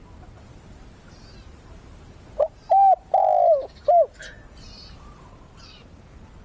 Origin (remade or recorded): recorded